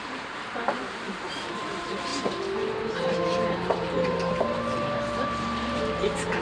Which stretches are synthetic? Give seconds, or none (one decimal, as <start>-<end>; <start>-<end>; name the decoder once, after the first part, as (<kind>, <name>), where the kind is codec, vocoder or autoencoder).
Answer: 0.0-2.1 (vocoder, BigVGAN v2); 3.0-6.4